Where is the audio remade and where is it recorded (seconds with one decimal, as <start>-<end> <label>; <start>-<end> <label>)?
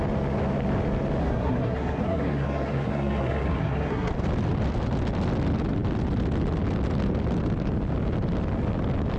0.0-1.2 recorded; 1.2-4.1 remade; 4.1-9.2 recorded